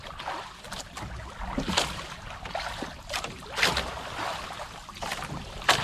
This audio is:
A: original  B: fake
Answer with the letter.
A